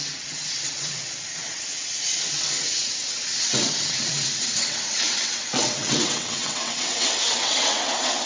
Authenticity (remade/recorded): remade